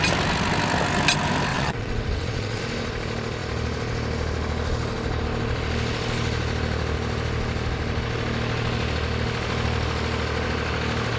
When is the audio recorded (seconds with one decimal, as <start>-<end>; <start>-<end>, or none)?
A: 0.0-1.5; 2.6-11.2